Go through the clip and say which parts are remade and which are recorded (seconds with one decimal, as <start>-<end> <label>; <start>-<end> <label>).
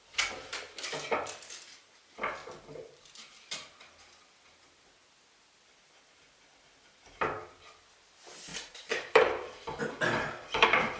0.0-2.4 recorded; 2.4-3.1 remade; 3.1-8.5 recorded; 8.5-9.8 remade; 9.8-11.0 recorded